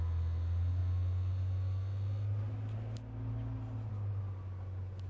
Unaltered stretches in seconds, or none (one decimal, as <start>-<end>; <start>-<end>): 0.0-5.1